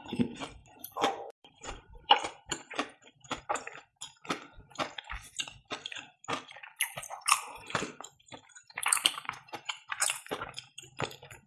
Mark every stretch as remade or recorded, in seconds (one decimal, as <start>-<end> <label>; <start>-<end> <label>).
0.0-3.9 remade; 3.9-7.2 recorded; 7.2-11.5 remade